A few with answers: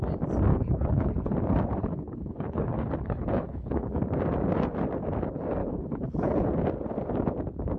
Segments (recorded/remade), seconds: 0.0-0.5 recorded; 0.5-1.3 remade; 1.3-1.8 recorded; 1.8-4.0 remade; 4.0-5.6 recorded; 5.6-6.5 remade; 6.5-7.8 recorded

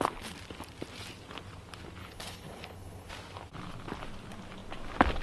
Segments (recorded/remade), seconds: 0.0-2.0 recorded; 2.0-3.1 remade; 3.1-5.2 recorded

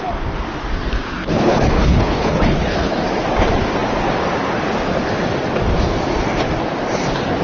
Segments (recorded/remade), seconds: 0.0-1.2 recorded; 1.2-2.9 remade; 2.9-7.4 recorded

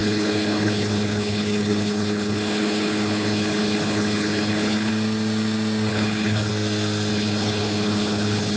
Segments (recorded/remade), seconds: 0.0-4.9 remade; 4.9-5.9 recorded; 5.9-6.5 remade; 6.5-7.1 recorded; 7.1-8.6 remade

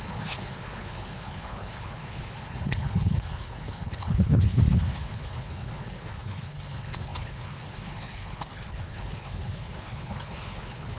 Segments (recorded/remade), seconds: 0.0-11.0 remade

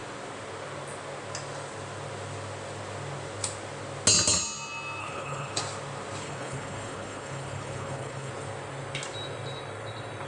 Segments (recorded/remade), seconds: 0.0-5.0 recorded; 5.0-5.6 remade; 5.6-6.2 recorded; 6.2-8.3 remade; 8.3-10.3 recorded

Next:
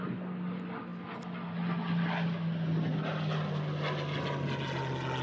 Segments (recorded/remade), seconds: 0.0-5.2 recorded